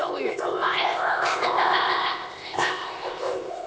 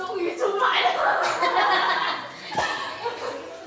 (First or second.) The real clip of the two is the second